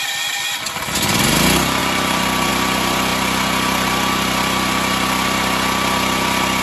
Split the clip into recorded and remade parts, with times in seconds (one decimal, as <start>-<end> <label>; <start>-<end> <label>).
0.0-1.8 recorded; 1.8-2.5 remade; 2.5-6.6 recorded